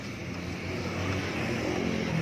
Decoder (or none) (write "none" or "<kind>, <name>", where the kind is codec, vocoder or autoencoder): none